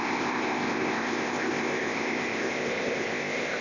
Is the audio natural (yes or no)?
no